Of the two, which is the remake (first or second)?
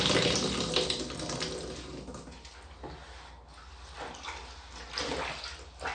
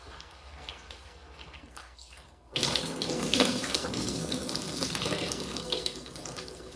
second